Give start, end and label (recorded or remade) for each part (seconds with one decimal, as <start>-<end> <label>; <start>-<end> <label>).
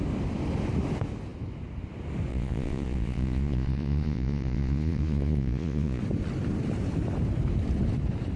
0.0-2.3 recorded; 2.3-6.0 remade; 6.0-8.4 recorded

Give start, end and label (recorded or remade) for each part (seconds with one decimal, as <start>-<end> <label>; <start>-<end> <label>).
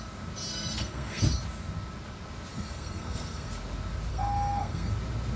0.0-0.5 recorded; 0.5-1.2 remade; 1.2-2.5 recorded; 2.5-3.5 remade; 3.5-4.1 recorded; 4.1-4.9 remade; 4.9-5.4 recorded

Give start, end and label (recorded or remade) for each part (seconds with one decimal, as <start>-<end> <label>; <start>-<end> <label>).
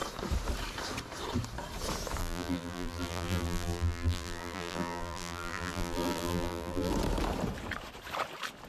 0.0-2.2 recorded; 2.2-6.9 remade; 6.9-8.7 recorded